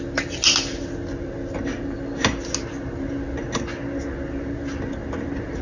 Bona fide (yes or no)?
yes